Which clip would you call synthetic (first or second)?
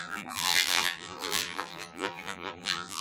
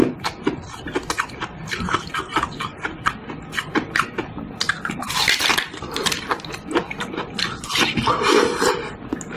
first